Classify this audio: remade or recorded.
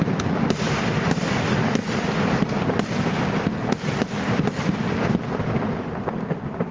recorded